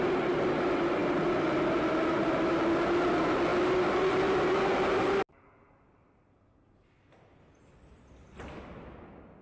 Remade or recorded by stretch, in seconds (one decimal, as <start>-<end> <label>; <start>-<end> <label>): 0.0-9.4 recorded